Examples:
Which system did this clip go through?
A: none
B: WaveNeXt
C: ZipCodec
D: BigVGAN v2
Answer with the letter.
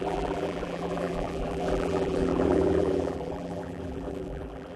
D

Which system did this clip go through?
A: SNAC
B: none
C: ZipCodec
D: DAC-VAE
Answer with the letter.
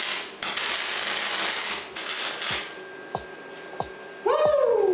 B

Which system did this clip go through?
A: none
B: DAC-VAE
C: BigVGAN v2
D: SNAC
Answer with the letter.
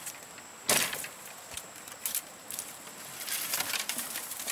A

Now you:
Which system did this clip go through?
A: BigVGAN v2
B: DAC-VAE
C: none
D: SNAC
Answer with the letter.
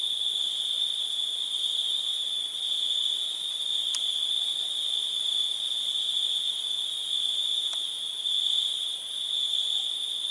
A